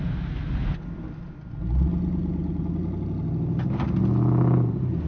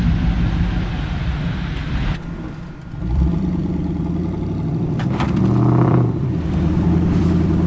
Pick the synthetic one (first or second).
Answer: second